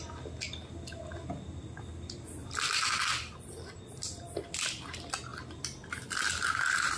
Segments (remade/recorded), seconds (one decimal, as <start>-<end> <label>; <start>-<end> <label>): 0.0-2.4 recorded; 2.4-3.5 remade; 3.5-7.0 recorded